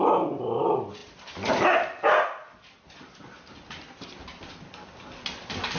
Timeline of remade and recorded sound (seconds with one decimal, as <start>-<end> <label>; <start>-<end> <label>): 0.0-5.8 recorded